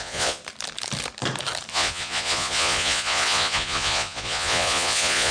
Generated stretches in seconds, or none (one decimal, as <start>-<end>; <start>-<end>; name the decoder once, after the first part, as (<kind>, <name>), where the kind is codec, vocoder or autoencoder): 0.0-0.4 (vocoder, Vocos); 1.7-5.3